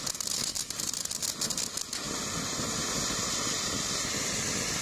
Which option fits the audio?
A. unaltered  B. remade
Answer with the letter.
A